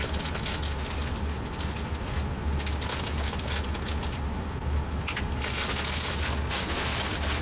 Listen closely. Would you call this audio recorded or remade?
recorded